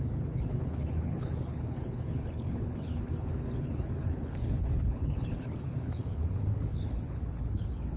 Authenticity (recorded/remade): remade